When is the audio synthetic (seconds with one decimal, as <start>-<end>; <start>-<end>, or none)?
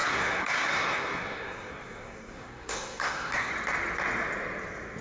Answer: 0.0-3.5